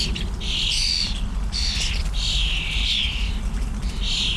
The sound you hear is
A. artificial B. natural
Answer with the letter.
B